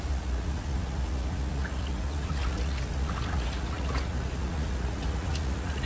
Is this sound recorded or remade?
remade